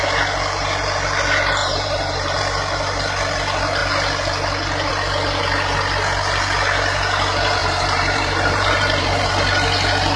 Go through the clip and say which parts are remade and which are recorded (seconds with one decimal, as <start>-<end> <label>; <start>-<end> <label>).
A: 0.0-1.6 recorded; 1.6-2.4 remade; 2.4-7.6 recorded; 7.6-9.3 remade; 9.3-10.2 recorded